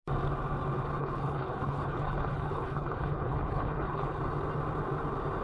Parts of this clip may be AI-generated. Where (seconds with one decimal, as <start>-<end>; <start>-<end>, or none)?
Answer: 1.0-4.2